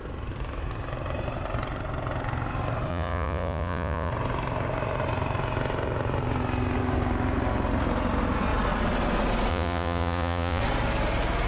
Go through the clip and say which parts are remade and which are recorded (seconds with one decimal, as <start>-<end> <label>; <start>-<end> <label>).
0.0-2.9 recorded; 2.9-4.1 remade; 4.1-9.5 recorded; 9.5-10.6 remade; 10.6-11.5 recorded